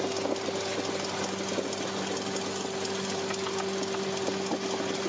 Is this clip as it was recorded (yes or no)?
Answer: yes